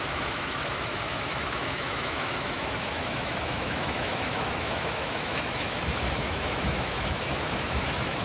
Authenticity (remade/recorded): remade